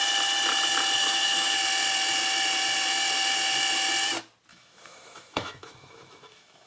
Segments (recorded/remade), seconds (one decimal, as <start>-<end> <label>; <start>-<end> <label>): 0.0-1.0 recorded; 1.0-1.6 remade; 1.6-4.5 recorded; 4.5-6.7 remade

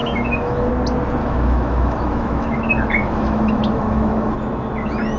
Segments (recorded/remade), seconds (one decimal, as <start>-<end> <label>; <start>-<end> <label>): 0.0-0.7 remade; 0.7-1.2 recorded; 1.2-4.3 remade; 4.3-5.2 recorded

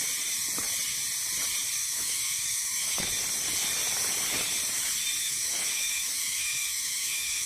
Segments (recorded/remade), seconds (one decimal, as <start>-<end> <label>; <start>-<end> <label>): 0.0-1.8 recorded; 1.8-3.0 remade; 3.0-5.2 recorded; 5.2-7.5 remade

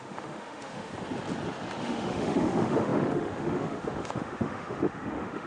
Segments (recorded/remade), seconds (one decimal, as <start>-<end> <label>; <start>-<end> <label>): 0.0-0.9 remade; 0.9-1.8 recorded; 1.8-5.5 remade

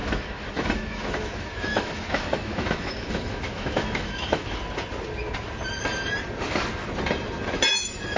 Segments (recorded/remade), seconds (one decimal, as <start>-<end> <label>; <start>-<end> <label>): 0.0-4.6 remade; 4.6-7.7 recorded; 7.7-8.2 remade

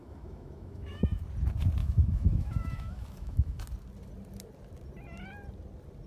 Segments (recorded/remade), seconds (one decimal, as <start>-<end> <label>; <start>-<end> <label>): 0.0-1.2 remade; 1.2-1.8 recorded; 1.8-3.6 remade; 3.6-6.1 recorded